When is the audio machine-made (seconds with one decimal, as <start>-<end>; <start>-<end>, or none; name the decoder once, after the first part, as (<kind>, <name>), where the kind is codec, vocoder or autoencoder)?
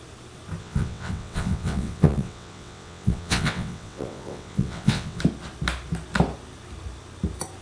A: 0.6-5.2 (vocoder, WaveNeXt)